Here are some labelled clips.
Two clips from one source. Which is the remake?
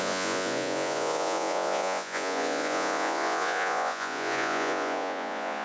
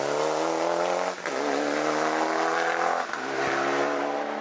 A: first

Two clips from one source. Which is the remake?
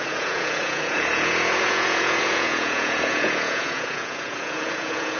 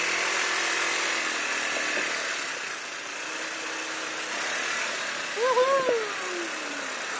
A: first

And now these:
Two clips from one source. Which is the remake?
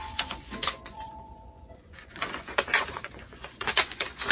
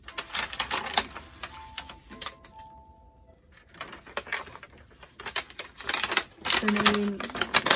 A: first